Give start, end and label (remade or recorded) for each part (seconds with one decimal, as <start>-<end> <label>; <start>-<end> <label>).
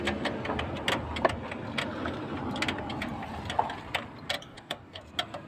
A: 0.0-4.4 recorded; 4.4-5.0 remade; 5.0-5.5 recorded